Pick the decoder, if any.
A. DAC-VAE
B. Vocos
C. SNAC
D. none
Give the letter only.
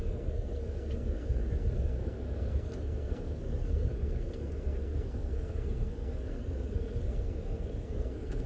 C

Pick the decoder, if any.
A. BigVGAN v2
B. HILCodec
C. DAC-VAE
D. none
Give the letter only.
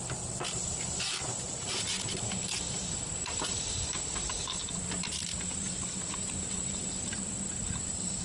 A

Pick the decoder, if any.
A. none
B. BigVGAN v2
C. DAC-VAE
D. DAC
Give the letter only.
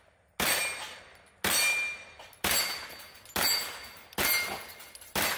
A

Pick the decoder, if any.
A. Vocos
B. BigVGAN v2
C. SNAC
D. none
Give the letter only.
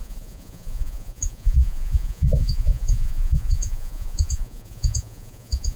A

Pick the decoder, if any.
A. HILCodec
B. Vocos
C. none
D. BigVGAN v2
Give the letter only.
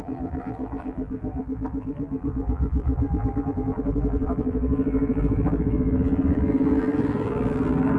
D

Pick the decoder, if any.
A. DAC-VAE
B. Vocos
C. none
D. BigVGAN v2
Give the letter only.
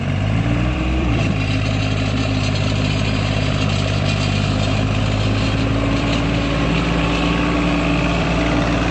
D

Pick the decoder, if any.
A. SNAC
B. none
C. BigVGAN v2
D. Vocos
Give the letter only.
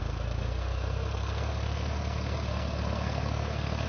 A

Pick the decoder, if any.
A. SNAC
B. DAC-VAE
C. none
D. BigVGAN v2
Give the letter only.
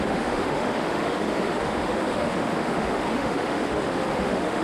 B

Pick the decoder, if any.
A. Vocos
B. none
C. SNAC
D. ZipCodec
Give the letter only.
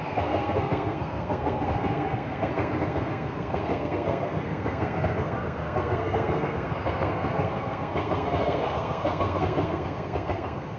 C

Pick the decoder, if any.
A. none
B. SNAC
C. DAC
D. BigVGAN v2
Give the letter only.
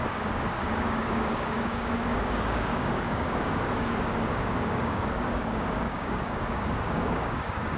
C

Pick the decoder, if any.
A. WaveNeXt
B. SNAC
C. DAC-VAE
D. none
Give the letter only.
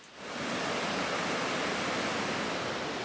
D